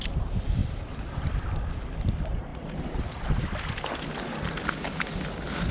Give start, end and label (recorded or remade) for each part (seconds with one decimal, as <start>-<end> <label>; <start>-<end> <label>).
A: 0.0-0.6 recorded; 0.6-1.4 remade; 1.4-5.7 recorded